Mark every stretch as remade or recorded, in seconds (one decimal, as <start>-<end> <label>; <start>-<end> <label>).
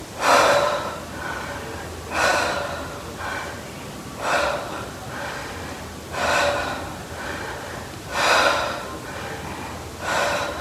0.0-10.6 recorded